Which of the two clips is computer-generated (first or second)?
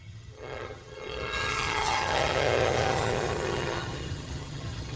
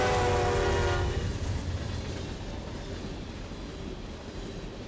first